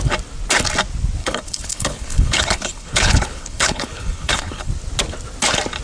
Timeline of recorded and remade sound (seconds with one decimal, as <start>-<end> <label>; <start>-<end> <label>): 0.0-1.2 recorded; 1.2-4.7 remade; 4.7-5.8 recorded